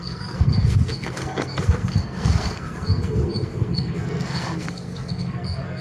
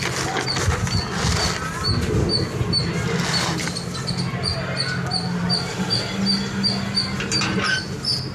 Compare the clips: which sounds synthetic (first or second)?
first